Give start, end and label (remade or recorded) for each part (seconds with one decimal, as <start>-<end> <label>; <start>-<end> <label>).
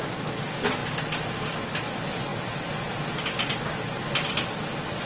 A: 0.0-5.1 recorded